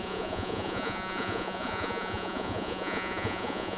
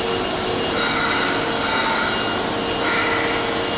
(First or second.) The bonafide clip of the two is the second